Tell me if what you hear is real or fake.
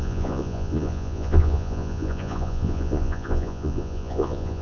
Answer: fake